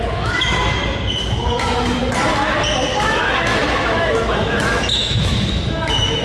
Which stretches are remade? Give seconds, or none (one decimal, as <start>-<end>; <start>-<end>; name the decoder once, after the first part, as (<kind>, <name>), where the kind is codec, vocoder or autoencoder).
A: 0.0-0.8 (autoencoder, DAC-VAE); 1.4-2.0; 2.9-6.2